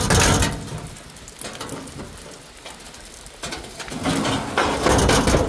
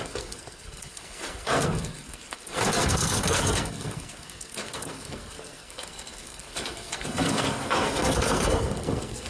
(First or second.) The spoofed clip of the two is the second